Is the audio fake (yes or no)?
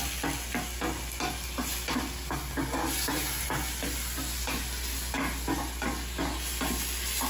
no